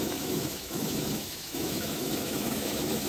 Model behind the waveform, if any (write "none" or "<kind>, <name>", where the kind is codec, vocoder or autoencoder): autoencoder, DAC-VAE